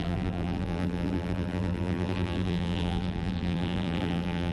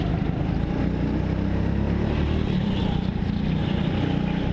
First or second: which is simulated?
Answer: first